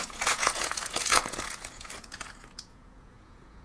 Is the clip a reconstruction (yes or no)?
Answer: yes